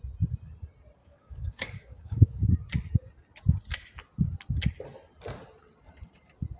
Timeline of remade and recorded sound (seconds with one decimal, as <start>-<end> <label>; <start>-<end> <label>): 0.0-1.0 recorded; 1.0-2.5 remade; 2.5-6.6 recorded